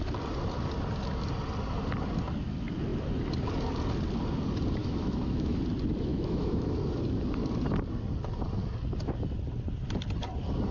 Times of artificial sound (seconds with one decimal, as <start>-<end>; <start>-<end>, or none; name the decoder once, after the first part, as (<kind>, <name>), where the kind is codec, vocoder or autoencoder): 4.8-5.6 (autoencoder, DAC-VAE); 6.1-6.7